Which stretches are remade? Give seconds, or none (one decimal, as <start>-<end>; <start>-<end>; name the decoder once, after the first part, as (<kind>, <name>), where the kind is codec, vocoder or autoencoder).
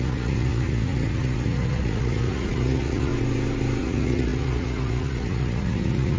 0.0-3.1 (vocoder, Vocos); 3.8-6.2